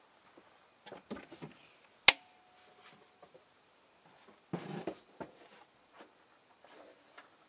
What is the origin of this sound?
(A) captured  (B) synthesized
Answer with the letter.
A